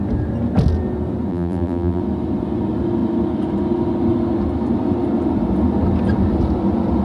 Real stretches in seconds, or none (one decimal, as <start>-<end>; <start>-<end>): 0.0-1.3; 2.0-7.0